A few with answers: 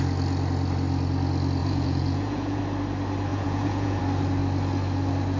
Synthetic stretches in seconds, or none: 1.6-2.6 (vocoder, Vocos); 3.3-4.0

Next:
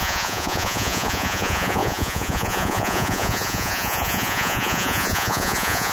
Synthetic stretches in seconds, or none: 0.0-5.9 (vocoder, Vocos)

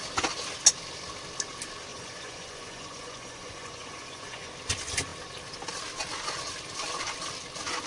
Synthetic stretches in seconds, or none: 1.9-4.5 (vocoder, Vocos)

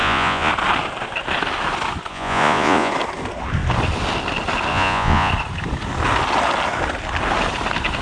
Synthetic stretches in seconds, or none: 0.0-0.5 (vocoder, Vocos); 2.1-2.9; 4.7-5.3